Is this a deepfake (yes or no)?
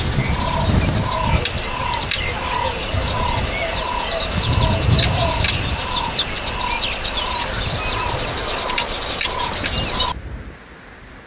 no